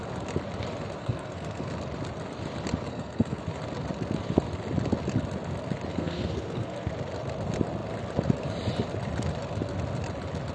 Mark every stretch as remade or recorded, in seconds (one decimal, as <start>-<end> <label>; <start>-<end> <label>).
0.0-1.0 recorded; 1.0-1.7 remade; 1.7-2.9 recorded; 2.9-3.4 remade; 3.4-5.9 recorded; 5.9-6.9 remade; 6.9-10.5 recorded